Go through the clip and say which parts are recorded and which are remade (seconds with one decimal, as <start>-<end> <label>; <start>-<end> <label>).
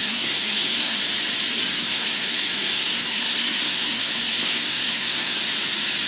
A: 0.0-1.0 remade; 1.0-1.7 recorded; 1.7-5.4 remade; 5.4-6.1 recorded